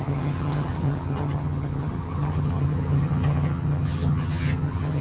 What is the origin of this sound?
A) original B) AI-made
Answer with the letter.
B